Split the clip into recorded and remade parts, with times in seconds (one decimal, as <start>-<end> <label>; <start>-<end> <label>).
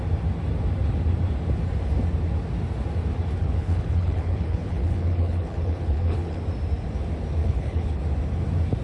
0.0-3.4 recorded; 3.4-6.4 remade; 6.4-7.4 recorded; 7.4-8.0 remade; 8.0-8.8 recorded